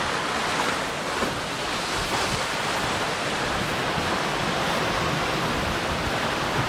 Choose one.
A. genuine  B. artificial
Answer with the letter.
A